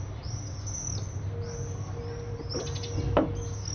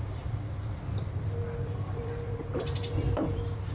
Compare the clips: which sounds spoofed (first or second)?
second